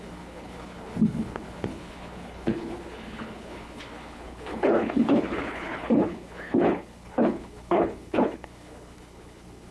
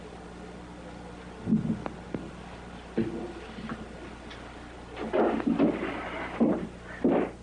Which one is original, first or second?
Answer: second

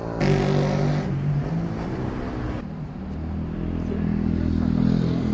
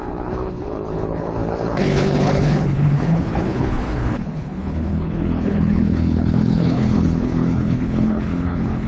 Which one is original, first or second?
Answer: first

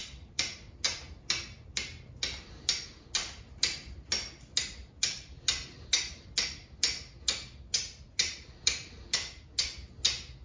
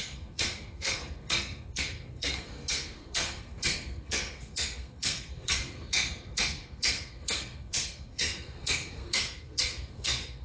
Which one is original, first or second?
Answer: first